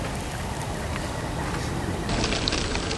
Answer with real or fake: real